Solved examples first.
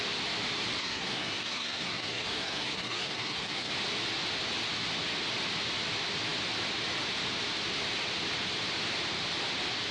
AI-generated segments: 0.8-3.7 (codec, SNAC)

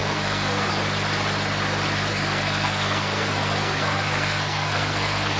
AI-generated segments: 0.0-0.7 (codec, SNAC); 2.1-5.4

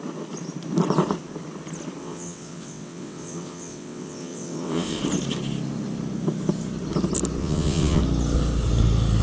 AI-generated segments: 2.0-5.0 (vocoder, WaveNeXt); 7.4-8.0

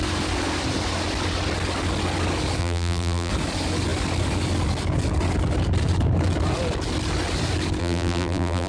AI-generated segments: 2.6-3.3 (vocoder, BigVGAN v2); 7.8-8.7